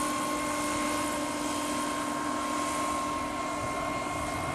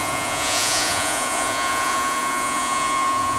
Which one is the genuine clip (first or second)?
first